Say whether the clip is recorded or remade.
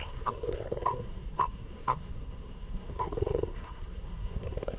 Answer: remade